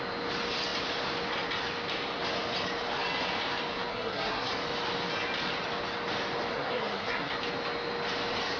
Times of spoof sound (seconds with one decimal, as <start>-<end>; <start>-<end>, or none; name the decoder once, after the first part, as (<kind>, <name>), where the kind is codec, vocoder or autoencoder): 3.9-4.5 (codec, SNAC); 6.5-7.3